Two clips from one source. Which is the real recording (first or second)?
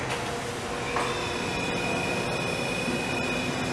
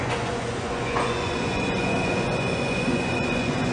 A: first